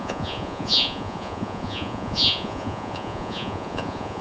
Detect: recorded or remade remade